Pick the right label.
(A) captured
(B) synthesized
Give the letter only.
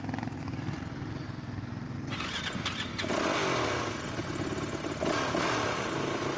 A